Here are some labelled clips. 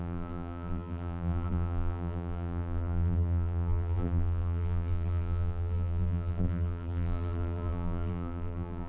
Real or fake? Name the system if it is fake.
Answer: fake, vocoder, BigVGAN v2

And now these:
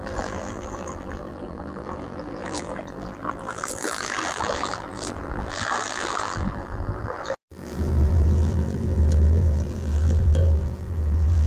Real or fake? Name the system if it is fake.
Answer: fake, vocoder, BigVGAN v2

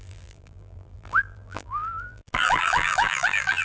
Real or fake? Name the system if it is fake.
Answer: fake, vocoder, BigVGAN v2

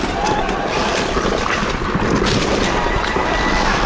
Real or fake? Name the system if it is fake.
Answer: real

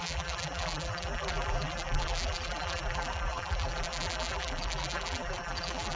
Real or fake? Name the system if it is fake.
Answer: fake, vocoder, BigVGAN v2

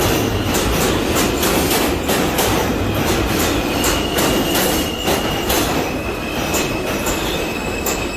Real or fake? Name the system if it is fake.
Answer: real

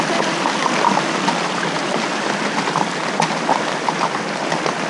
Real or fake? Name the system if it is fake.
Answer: real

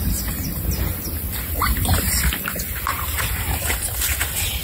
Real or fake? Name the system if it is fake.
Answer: real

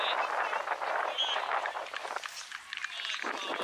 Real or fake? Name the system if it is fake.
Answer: real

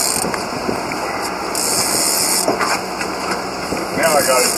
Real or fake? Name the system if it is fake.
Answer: real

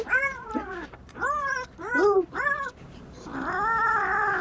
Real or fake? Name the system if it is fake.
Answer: fake, vocoder, BigVGAN v2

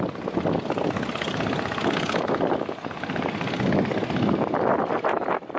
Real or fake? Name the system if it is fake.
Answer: real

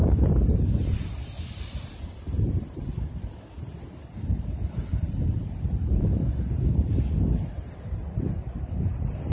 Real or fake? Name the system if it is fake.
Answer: fake, vocoder, BigVGAN v2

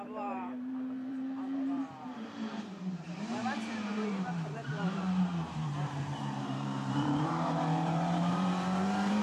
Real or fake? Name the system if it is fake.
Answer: fake, vocoder, BigVGAN v2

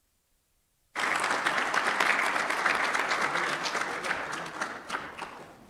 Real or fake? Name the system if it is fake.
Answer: real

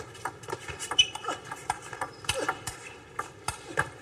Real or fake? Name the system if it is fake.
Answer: fake, vocoder, BigVGAN v2